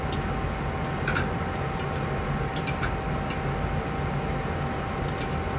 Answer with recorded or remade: recorded